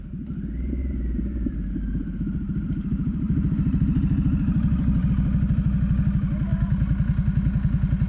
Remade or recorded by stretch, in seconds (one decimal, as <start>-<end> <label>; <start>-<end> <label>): 0.0-0.8 recorded; 0.8-5.1 remade; 5.1-8.1 recorded